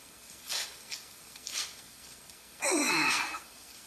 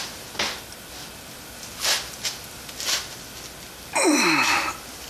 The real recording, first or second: second